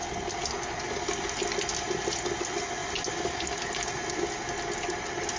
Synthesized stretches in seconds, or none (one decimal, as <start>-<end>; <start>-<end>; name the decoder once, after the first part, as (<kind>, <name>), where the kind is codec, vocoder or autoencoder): none